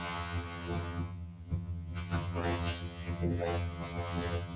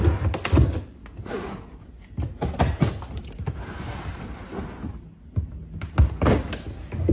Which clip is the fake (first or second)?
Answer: first